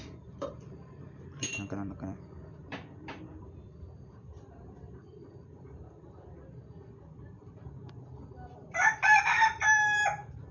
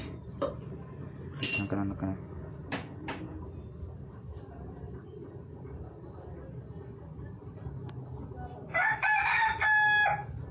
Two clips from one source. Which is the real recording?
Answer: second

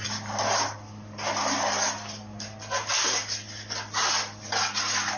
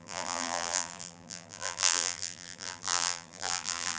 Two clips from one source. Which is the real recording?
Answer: first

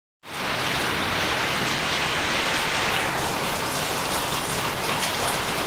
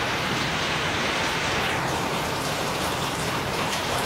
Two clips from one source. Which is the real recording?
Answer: first